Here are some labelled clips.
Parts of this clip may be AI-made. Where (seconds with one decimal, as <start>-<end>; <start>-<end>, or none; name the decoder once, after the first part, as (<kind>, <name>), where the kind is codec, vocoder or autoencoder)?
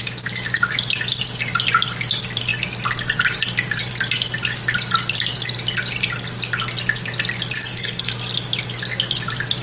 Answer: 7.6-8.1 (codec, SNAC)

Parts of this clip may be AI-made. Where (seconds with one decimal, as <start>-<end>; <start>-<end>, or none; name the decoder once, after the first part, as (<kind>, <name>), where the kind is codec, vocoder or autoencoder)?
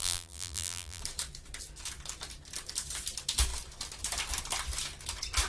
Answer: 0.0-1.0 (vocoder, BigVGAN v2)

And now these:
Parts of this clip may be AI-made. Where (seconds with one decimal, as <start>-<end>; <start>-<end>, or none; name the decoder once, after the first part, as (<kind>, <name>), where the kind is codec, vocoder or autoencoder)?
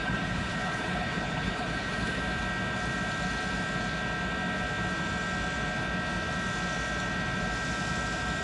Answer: 0.0-2.2 (codec, HILCodec)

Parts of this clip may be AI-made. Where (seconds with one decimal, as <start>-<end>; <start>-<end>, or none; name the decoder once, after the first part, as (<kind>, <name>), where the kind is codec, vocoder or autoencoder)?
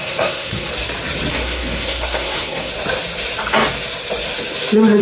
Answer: 0.0-0.7 (codec, SNAC); 1.3-2.7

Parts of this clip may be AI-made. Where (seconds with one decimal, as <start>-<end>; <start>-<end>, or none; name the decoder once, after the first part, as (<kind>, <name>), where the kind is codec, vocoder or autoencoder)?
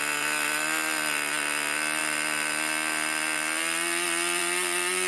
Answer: none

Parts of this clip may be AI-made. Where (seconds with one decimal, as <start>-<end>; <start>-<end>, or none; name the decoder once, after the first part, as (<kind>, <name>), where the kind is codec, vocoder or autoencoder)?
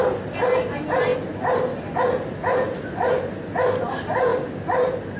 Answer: none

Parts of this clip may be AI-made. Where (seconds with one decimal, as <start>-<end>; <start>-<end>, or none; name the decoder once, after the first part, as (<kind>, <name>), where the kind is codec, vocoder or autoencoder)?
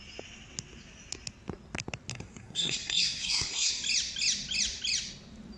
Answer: 2.1-3.7 (codec, SNAC)